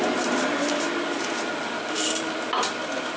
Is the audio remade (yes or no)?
no